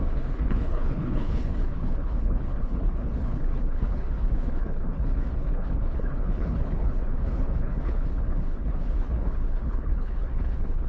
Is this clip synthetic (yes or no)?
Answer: yes